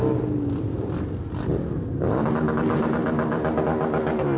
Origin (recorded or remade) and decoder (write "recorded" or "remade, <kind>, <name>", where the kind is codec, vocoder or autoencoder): recorded